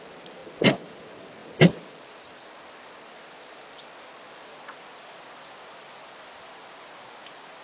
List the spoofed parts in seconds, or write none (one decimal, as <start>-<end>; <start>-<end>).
none